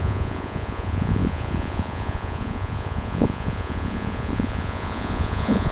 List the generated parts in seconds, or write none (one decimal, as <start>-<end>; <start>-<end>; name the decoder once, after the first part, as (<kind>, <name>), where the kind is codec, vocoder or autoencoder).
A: 0.0-5.7 (vocoder, Vocos)